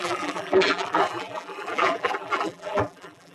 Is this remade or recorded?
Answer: remade